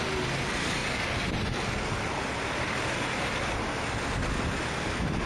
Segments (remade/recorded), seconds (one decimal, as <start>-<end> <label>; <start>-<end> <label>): 0.0-5.3 recorded